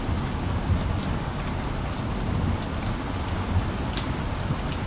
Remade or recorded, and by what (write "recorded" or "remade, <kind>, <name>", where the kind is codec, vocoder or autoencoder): recorded